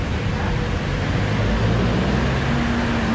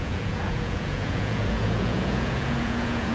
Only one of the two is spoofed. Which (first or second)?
second